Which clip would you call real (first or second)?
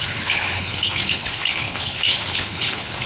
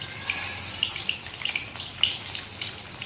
second